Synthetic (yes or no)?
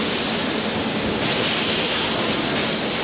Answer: no